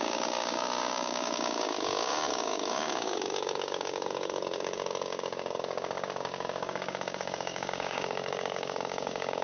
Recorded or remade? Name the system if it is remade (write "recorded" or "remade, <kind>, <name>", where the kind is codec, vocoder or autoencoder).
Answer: remade, codec, DAC